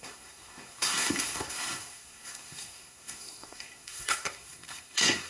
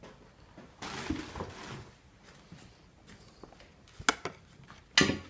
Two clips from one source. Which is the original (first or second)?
second